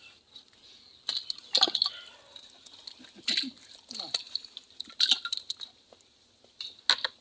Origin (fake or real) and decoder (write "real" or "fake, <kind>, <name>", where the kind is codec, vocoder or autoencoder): real